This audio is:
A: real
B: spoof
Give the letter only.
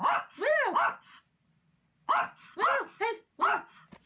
A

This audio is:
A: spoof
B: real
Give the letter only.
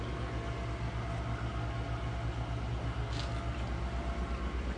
B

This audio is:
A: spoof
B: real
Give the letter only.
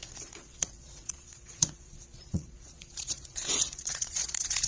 A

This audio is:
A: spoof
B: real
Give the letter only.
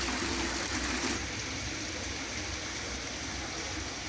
B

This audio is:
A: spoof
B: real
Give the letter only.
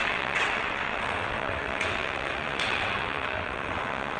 A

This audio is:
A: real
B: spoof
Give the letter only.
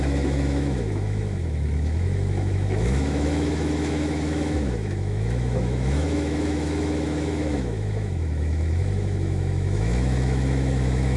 B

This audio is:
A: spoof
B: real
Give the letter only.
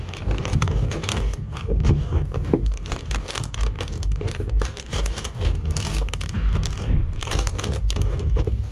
A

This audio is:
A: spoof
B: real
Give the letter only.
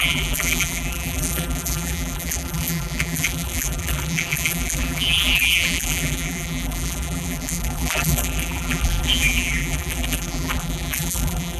A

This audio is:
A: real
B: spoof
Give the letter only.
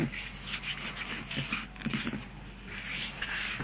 A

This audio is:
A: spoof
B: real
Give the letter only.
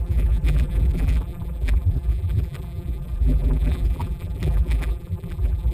A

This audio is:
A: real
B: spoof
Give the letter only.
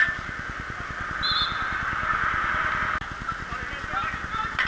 A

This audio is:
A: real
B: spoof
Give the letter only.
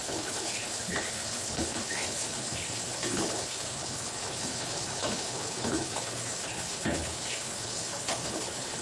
B